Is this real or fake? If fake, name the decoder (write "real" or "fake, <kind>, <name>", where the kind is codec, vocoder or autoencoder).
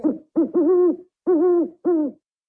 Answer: real